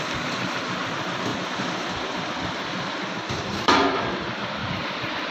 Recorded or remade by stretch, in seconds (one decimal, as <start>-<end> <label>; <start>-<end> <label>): 0.0-1.3 recorded; 1.3-4.1 remade; 4.1-4.6 recorded; 4.6-5.3 remade